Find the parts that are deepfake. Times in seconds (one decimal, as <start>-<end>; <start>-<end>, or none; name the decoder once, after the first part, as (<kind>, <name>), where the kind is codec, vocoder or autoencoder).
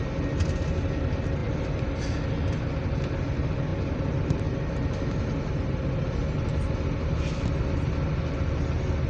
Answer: none